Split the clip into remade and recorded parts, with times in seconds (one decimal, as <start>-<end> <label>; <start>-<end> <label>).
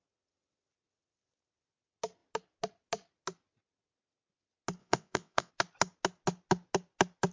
0.0-4.8 recorded; 4.8-5.5 remade; 5.5-7.3 recorded